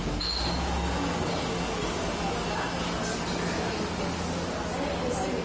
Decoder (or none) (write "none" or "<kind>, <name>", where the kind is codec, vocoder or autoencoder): none